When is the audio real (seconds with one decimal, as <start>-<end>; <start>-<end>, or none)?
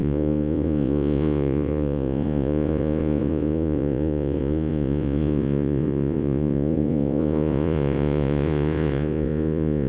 none